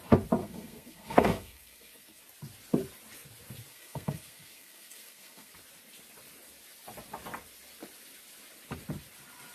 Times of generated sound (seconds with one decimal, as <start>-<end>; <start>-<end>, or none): 0.4-2.2; 3.7-5.5